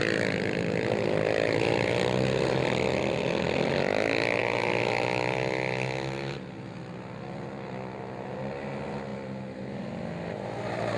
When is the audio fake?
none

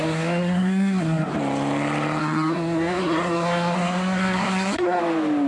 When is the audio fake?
0.0-1.3 (codec, SNAC); 2.2-5.0